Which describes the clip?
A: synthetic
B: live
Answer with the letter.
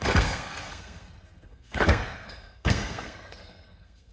A